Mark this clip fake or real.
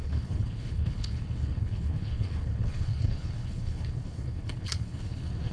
fake